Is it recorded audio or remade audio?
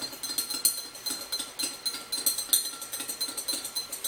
recorded